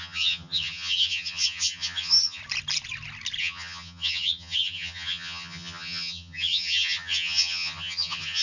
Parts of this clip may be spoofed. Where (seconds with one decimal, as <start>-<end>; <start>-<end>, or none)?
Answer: 0.0-2.4; 3.4-8.4